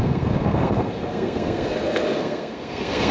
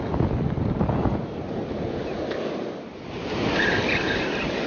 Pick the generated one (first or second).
first